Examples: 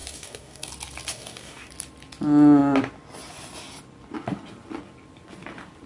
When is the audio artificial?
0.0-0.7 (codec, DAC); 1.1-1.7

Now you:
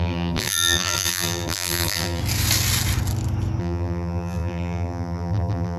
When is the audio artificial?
0.0-2.2 (vocoder, BigVGAN v2); 3.6-5.8